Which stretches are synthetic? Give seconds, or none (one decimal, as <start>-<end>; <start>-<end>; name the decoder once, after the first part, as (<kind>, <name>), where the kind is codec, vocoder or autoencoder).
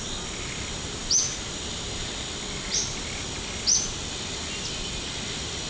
none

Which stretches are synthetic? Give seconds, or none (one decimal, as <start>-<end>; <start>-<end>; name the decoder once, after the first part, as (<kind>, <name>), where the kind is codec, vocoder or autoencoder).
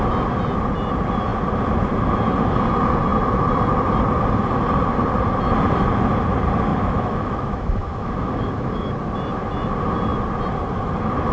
6.7-8.9 (autoencoder, DAC-VAE)